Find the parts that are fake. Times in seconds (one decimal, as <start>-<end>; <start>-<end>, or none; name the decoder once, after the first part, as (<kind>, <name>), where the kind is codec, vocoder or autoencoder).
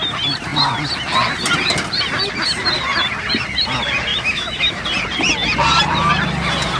4.1-4.8 (autoencoder, DAC-VAE)